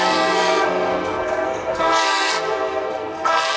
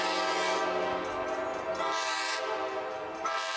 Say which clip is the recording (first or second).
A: second